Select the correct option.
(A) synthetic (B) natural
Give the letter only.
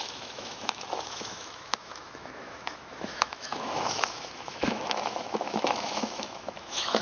A